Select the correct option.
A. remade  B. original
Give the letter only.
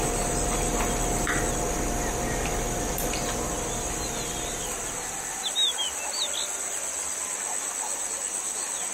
B